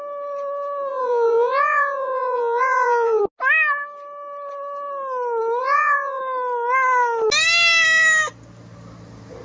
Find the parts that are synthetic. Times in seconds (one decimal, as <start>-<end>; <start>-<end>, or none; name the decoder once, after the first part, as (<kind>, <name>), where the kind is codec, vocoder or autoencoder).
0.9-3.2 (vocoder, Vocos); 5.6-6.2